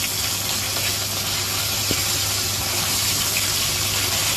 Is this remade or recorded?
recorded